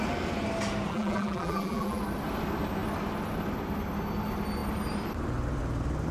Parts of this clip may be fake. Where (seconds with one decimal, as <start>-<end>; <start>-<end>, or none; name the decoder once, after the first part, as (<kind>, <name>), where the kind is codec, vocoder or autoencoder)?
0.9-2.0 (vocoder, BigVGAN v2)